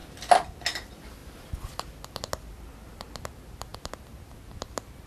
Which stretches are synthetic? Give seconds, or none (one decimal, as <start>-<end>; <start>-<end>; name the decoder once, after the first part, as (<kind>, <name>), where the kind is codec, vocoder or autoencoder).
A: none